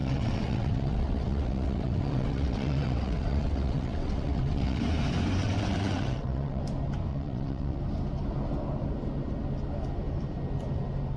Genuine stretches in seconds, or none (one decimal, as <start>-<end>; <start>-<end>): 4.8-5.4; 6.6-7.1; 7.8-11.2

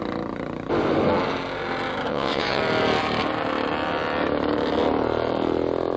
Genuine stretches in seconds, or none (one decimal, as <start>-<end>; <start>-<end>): 0.0-2.1; 2.6-6.0

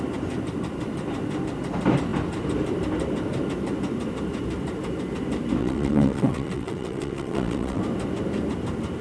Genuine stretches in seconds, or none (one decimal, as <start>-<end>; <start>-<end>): 0.0-5.6; 7.8-9.0

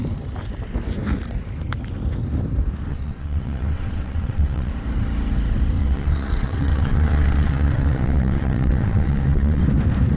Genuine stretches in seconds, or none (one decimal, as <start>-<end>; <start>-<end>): 0.0-2.9; 4.7-5.8; 9.6-10.2

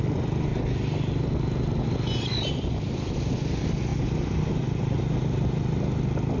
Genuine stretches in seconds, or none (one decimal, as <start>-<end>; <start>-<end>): 0.0-6.4

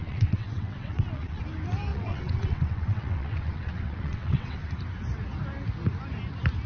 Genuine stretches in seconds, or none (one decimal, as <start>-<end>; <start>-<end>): 1.4-1.9; 4.7-6.7